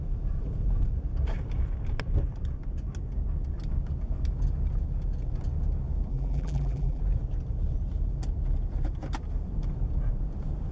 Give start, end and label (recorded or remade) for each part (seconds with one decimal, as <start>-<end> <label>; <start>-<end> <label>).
0.0-6.1 recorded; 6.1-7.0 remade; 7.0-10.7 recorded